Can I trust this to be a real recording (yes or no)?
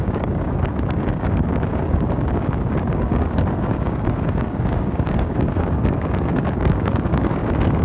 no